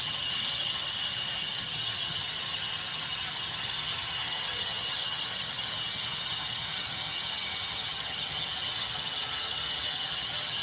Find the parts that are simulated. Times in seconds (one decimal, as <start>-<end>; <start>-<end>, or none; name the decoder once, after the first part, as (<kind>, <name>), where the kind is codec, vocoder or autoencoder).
0.0-10.6 (vocoder, HiFi-GAN)